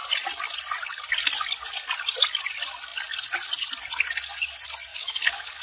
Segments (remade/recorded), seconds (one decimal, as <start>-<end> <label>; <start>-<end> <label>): 0.0-4.9 recorded; 4.9-5.6 remade